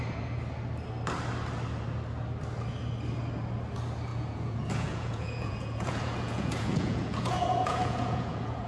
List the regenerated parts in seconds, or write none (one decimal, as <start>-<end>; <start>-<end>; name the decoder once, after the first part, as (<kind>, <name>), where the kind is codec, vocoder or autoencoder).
4.1-8.7 (vocoder, Vocos)